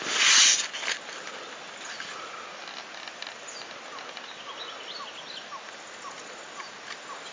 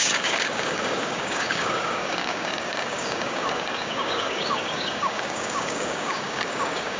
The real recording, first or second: first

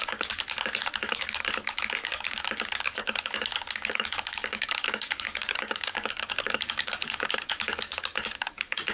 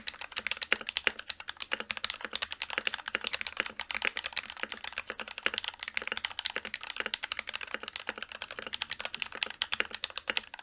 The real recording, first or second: second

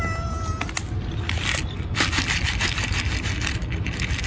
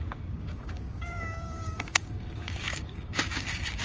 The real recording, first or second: first